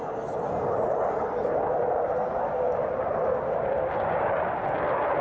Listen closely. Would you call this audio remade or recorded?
recorded